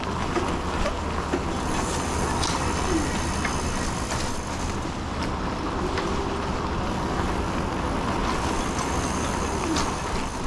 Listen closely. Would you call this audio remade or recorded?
recorded